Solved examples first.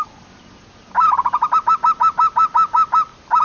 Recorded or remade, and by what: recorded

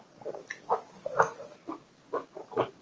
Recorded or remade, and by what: recorded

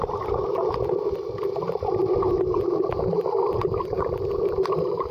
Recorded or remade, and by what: recorded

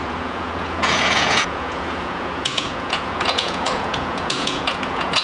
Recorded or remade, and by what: remade, vocoder, Vocos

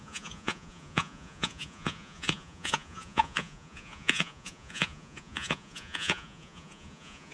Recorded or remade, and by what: remade, vocoder, Vocos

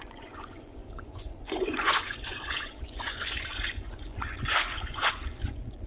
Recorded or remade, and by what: remade, vocoder, Vocos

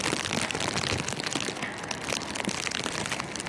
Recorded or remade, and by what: recorded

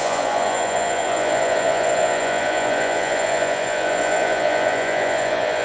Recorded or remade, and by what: remade, vocoder, Vocos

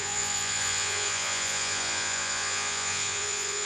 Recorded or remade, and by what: remade, vocoder, Vocos